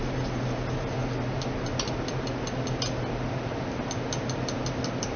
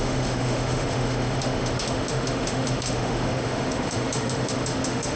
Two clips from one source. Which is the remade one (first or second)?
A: second